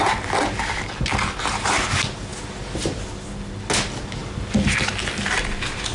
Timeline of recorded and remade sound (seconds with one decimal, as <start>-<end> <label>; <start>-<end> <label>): 0.0-5.9 recorded